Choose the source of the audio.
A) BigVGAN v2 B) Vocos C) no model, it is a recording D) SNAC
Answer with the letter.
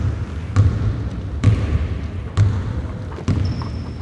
C